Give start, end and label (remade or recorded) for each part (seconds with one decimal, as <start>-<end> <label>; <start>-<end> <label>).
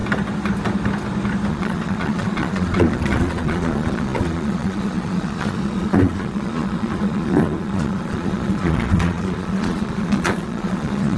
0.0-1.5 recorded; 1.5-11.2 remade